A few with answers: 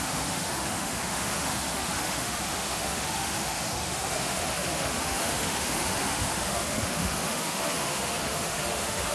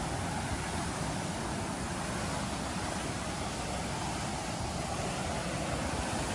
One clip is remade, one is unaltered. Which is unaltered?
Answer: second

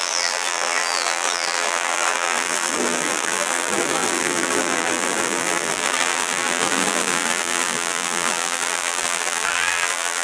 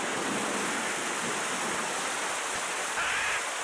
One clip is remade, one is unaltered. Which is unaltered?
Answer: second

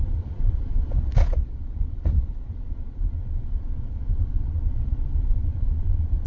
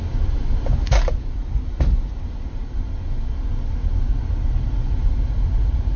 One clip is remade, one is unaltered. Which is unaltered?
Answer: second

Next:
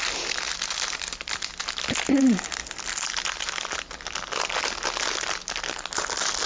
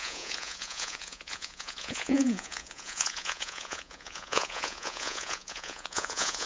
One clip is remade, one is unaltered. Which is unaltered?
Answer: first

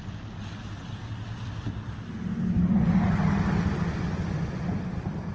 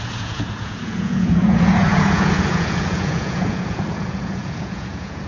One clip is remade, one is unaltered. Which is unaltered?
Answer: first